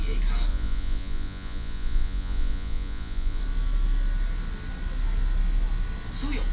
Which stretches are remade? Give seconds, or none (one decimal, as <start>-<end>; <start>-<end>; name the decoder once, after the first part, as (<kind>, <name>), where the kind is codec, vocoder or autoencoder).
0.5-3.4 (vocoder, Vocos)